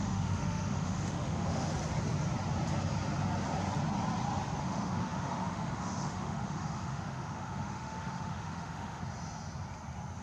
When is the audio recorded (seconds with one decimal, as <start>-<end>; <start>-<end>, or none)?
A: 1.7-4.6; 9.0-10.2